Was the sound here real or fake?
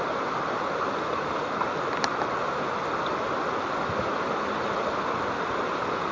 real